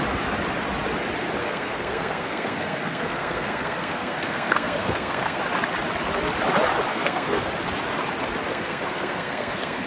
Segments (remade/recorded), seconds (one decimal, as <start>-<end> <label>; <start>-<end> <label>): 0.0-1.4 recorded; 1.4-5.4 remade; 5.4-6.9 recorded; 6.9-7.5 remade; 7.5-8.5 recorded; 8.5-9.9 remade